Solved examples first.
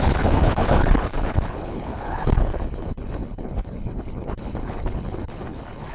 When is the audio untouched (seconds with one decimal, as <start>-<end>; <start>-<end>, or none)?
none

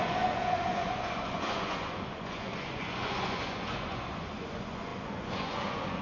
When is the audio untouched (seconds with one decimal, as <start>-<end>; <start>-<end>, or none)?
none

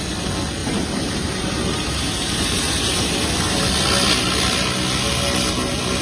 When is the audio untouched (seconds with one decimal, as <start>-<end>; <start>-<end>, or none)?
0.0-0.6; 3.6-6.0

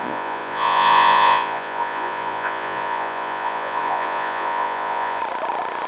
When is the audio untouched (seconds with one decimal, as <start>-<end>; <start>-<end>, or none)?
5.2-5.9

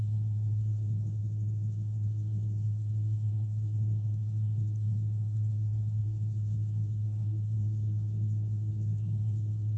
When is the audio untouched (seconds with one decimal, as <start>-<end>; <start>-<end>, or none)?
none